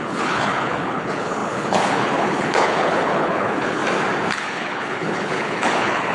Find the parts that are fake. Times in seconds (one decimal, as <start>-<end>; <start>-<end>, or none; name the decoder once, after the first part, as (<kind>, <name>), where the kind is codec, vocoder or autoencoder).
0.0-3.8 (codec, HILCodec); 4.3-6.1